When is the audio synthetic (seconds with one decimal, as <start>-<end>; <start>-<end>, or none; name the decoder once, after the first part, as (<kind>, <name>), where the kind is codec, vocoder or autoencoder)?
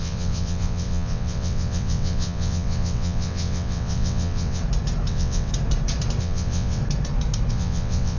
0.0-4.6 (vocoder, WaveNeXt); 5.1-5.5; 6.2-6.8; 7.5-8.2